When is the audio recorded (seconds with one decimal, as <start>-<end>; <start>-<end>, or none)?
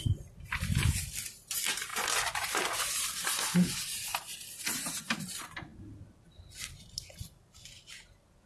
0.0-8.5